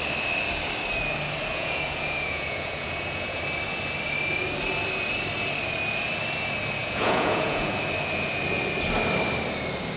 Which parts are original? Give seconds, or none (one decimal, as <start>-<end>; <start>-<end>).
0.0-1.5; 3.4-6.8; 7.7-10.0